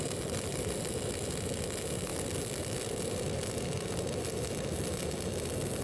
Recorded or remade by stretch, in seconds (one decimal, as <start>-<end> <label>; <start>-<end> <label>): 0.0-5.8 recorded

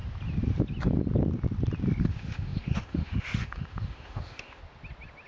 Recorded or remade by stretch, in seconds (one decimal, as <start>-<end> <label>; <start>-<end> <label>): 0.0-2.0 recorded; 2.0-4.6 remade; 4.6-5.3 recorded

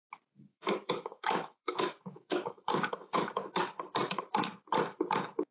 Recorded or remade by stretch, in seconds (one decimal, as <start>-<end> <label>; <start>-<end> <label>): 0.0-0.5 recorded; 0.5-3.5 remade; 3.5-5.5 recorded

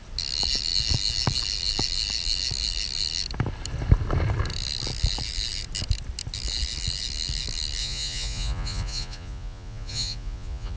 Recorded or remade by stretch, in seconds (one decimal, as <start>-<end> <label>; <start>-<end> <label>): 0.0-7.8 recorded; 7.8-10.8 remade

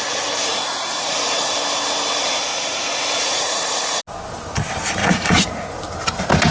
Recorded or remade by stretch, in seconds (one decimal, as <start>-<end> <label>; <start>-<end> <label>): 0.0-0.5 recorded; 0.5-1.5 remade; 1.5-2.5 recorded; 2.5-4.0 remade; 4.0-5.0 recorded; 5.0-5.8 remade; 5.8-6.5 recorded

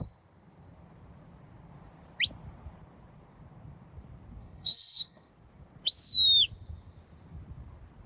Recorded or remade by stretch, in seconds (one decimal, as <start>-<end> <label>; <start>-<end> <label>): 0.0-4.4 recorded; 4.4-5.3 remade; 5.3-8.1 recorded

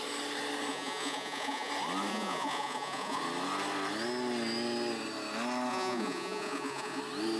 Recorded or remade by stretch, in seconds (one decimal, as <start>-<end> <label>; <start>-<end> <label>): 0.0-0.7 recorded; 0.7-1.7 remade; 1.7-2.1 recorded; 2.1-3.2 remade; 3.2-5.7 recorded; 5.7-7.0 remade; 7.0-7.4 recorded

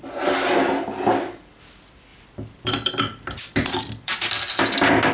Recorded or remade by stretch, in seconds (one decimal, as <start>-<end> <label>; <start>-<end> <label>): 0.0-2.1 recorded; 2.1-4.1 remade; 4.1-5.1 recorded